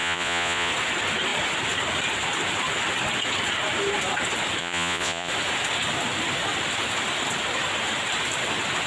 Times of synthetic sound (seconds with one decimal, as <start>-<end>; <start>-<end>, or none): 0.0-0.7; 4.6-5.3